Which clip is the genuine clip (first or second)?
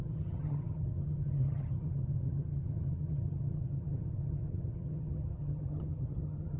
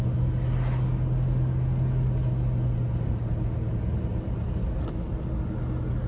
second